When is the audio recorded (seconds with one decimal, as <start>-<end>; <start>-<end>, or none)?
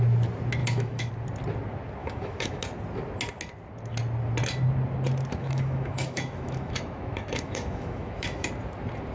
0.0-0.6; 1.1-2.0; 2.6-5.4; 8.5-9.1